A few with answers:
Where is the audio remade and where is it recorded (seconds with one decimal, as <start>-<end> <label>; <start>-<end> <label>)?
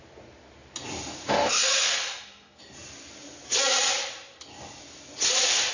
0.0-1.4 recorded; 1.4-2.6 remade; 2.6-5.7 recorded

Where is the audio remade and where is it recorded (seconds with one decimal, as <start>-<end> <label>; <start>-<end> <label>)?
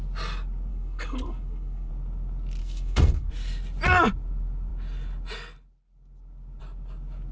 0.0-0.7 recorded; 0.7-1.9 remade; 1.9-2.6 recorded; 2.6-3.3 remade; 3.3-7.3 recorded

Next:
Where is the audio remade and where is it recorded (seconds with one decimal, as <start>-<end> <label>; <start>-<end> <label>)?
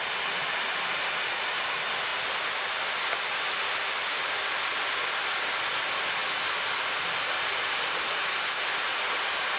0.0-9.6 recorded